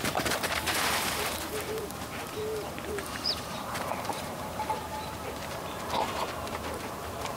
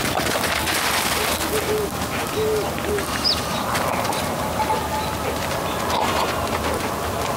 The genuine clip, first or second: second